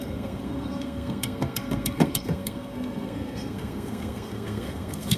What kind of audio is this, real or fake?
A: fake